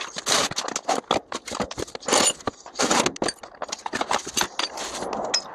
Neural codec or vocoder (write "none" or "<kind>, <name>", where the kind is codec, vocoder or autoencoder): none